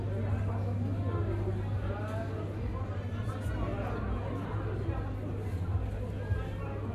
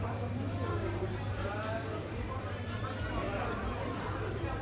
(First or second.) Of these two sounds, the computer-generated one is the second